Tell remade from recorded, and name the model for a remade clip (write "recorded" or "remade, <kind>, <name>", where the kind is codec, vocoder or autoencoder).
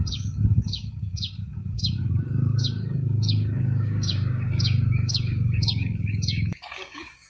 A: remade, codec, DAC